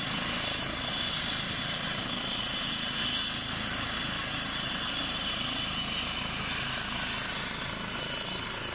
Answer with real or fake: real